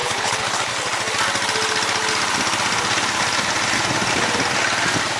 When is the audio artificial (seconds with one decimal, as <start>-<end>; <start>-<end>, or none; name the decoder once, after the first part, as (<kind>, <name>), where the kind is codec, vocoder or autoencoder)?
0.0-0.7 (codec, HILCodec)